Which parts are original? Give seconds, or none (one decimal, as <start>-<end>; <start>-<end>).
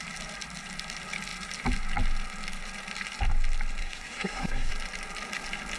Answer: 0.0-3.8; 4.7-5.8